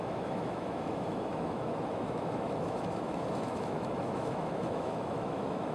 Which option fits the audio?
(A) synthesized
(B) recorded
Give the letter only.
A